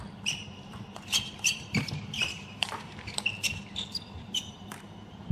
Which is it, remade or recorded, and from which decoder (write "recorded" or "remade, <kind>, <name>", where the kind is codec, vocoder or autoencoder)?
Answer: remade, vocoder, BigVGAN v2